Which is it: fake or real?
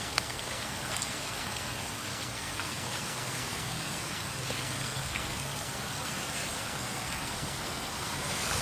fake